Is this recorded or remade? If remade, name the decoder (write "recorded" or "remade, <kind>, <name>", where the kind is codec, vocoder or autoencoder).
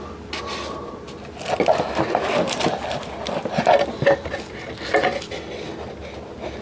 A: recorded